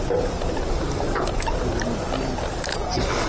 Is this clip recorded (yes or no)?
yes